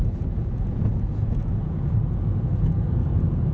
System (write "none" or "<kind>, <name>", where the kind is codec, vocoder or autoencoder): vocoder, Vocos